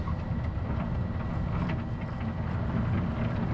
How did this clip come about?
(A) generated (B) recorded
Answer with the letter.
B